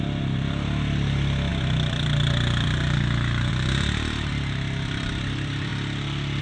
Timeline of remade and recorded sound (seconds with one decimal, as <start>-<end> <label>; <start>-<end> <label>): 0.0-5.7 remade; 5.7-6.4 recorded